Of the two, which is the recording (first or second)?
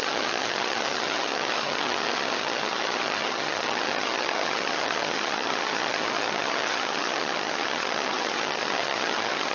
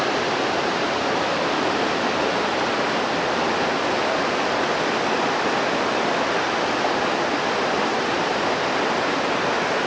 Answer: second